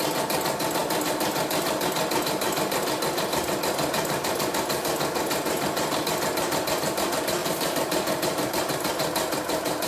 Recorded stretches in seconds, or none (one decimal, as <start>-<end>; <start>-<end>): 0.0-7.4; 8.9-9.9